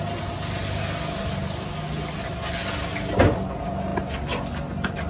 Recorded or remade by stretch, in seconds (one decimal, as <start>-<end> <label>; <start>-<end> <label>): 0.0-5.1 recorded